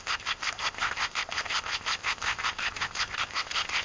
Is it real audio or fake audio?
fake